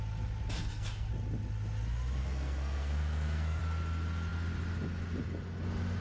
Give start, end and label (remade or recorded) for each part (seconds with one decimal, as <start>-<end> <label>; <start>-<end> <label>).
0.0-0.6 recorded; 0.6-1.1 remade; 1.1-2.2 recorded; 2.2-3.6 remade; 3.6-6.0 recorded